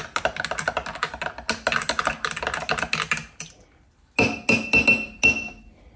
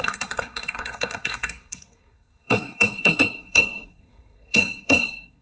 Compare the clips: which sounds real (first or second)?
first